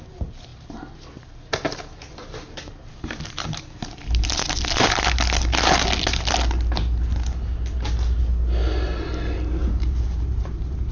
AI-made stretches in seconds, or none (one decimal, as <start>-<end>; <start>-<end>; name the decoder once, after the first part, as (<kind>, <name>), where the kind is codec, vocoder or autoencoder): 0.5-3.6 (vocoder, BigVGAN v2); 9.6-10.9